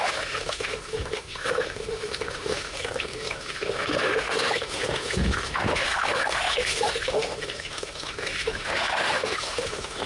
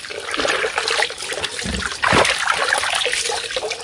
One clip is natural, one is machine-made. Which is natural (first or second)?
second